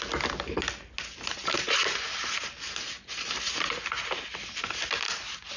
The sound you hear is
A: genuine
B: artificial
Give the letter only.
A